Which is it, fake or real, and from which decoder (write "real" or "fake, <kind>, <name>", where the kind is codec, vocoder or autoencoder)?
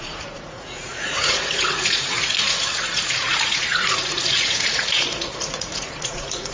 fake, vocoder, Vocos